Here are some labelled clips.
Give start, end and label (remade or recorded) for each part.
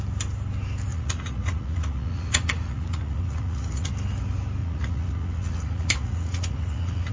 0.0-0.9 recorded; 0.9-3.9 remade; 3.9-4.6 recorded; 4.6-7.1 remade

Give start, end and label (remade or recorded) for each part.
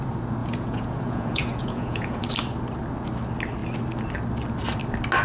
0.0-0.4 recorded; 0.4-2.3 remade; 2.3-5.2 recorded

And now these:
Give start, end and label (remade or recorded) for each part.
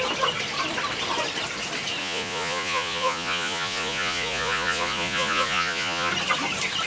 0.0-2.0 recorded; 2.0-6.1 remade; 6.1-6.9 recorded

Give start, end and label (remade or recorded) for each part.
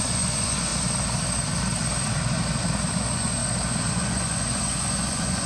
0.0-0.7 remade; 0.7-2.9 recorded; 2.9-3.4 remade; 3.4-3.9 recorded; 3.9-5.5 remade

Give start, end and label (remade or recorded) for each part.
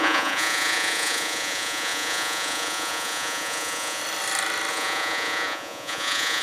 0.0-4.0 remade; 4.0-4.7 recorded; 4.7-6.4 remade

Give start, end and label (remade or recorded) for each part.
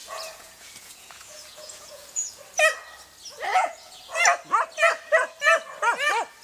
0.0-2.4 remade; 2.4-3.5 recorded; 3.5-4.2 remade; 4.2-6.4 recorded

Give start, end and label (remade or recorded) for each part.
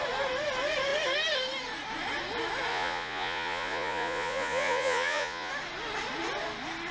0.0-2.7 recorded; 2.7-5.5 remade; 5.5-6.9 recorded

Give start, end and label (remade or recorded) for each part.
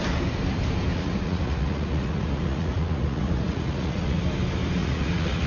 0.0-0.9 recorded; 0.9-4.2 remade; 4.2-4.8 recorded; 4.8-5.5 remade